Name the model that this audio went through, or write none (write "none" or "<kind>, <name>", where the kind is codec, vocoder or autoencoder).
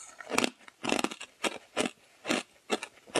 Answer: none